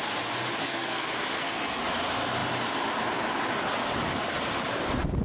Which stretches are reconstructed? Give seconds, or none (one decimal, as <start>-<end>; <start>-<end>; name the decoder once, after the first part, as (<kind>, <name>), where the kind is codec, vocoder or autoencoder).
0.6-1.8 (codec, SNAC)